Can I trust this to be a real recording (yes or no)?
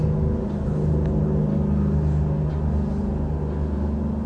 yes